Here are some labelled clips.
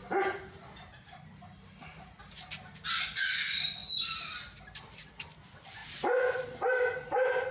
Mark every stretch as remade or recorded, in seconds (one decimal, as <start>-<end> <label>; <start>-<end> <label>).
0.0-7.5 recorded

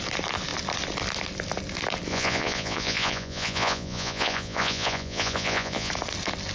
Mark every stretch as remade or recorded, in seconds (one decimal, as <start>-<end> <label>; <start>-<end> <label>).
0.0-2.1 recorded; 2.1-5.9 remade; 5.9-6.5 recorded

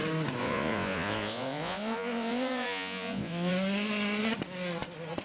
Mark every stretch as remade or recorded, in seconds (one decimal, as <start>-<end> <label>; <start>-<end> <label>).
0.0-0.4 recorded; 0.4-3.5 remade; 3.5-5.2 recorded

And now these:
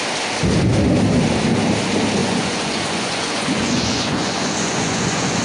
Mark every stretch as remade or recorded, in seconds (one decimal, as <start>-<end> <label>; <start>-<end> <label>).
0.0-2.2 recorded; 2.2-5.4 remade